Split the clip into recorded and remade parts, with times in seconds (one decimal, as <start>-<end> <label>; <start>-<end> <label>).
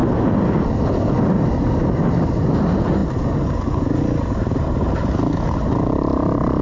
0.0-6.6 recorded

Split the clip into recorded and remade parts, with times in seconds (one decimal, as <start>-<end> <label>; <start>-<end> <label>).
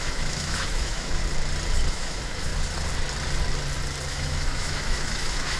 0.0-1.2 remade; 1.2-1.9 recorded; 1.9-2.5 remade; 2.5-4.1 recorded; 4.1-5.6 remade